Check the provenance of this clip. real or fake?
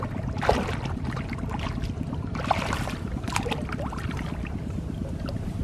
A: real